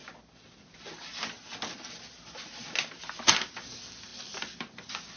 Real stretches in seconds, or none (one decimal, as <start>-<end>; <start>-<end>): 0.0-5.2